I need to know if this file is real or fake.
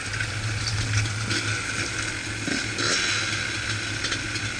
real